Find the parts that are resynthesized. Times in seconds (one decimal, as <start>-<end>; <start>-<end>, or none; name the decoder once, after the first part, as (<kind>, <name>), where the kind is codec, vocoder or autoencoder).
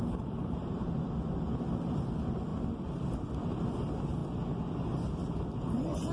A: 0.0-4.2 (vocoder, BigVGAN v2); 5.2-6.1